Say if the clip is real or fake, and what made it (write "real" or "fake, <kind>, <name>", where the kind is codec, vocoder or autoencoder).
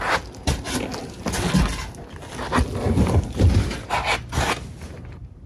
real